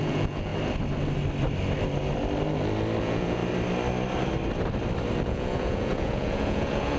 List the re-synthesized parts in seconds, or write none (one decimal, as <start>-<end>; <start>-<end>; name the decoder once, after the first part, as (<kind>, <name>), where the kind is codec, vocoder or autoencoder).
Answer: 0.0-0.5 (vocoder, Vocos); 3.0-3.4; 5.3-7.0